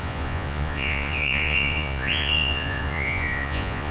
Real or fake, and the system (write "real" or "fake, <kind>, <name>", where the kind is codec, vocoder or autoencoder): fake, vocoder, Vocos